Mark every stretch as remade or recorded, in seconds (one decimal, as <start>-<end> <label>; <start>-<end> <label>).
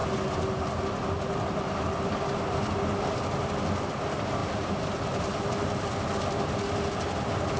0.0-7.6 recorded